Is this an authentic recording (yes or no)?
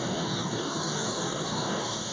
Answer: no